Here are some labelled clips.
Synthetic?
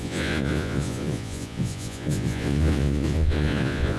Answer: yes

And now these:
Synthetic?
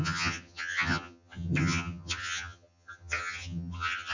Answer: yes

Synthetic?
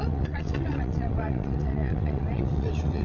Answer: yes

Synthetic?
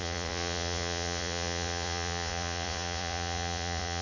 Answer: yes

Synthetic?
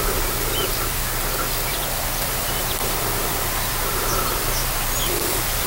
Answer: yes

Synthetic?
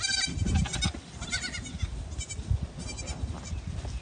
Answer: no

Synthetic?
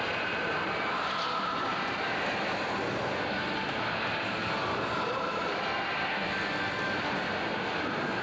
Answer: no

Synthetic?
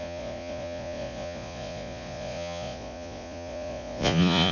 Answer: yes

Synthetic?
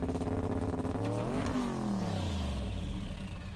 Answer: no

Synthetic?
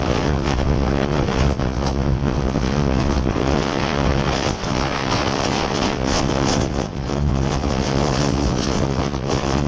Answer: yes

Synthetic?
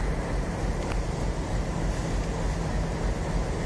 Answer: no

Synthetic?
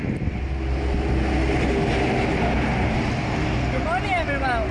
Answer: no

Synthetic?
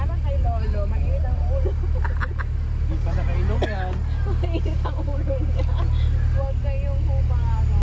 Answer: no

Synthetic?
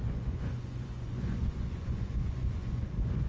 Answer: yes